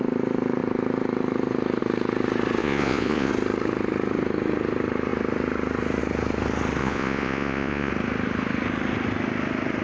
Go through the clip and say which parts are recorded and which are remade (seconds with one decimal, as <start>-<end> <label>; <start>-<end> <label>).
0.0-2.6 recorded; 2.6-3.3 remade; 3.3-6.8 recorded; 6.8-7.9 remade; 7.9-9.8 recorded